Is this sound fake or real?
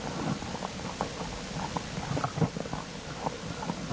real